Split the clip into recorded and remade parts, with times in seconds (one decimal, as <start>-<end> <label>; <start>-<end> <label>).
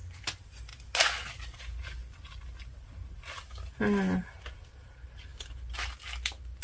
0.0-6.6 recorded